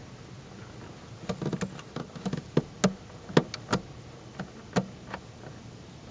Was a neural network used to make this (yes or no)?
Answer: no